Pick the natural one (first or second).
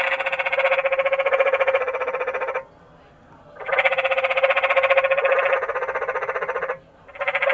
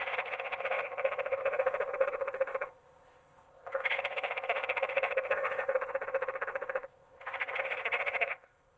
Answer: first